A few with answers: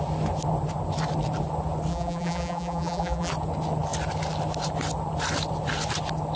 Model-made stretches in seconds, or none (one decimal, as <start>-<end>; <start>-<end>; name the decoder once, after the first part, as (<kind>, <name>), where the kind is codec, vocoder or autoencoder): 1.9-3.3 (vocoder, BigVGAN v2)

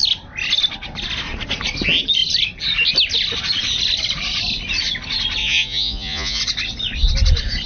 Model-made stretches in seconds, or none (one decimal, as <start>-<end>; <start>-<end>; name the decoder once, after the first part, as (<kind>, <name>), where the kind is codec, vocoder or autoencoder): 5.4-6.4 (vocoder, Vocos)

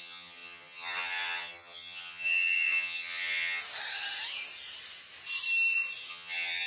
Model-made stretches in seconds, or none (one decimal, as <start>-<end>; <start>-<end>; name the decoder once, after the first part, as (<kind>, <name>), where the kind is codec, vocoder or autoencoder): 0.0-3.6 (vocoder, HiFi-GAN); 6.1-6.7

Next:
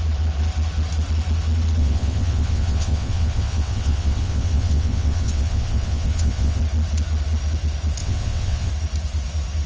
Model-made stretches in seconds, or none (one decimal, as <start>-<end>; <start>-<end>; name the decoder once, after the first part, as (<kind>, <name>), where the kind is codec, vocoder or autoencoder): 1.8-6.6 (vocoder, WaveNeXt); 8.0-8.7